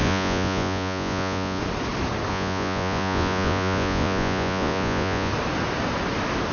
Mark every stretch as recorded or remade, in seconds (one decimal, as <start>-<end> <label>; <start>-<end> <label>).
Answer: 0.0-1.6 remade; 1.6-2.3 recorded; 2.3-5.3 remade; 5.3-6.5 recorded